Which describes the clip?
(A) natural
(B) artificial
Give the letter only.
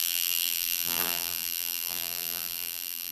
B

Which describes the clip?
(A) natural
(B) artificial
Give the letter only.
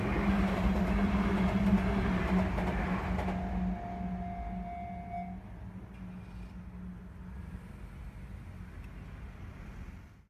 A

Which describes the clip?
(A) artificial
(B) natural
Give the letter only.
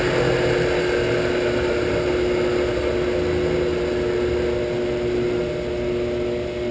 B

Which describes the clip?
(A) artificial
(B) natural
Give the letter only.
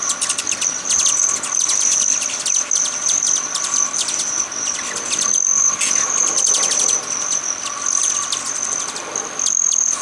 B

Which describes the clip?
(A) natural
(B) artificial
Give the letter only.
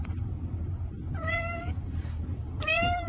B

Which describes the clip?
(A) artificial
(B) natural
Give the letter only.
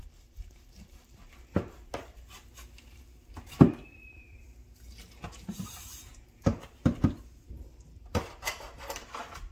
A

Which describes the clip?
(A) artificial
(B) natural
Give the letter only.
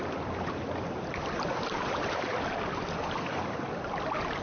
B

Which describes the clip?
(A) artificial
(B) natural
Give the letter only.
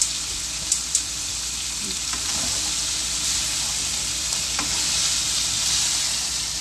A